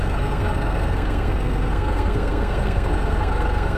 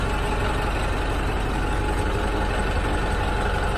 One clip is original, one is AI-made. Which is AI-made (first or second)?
first